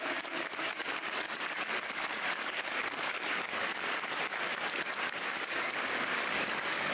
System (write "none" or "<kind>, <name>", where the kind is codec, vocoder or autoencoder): codec, DAC